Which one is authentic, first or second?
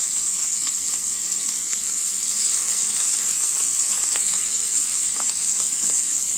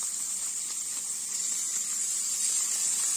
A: second